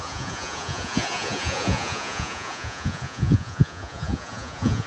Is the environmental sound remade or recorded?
remade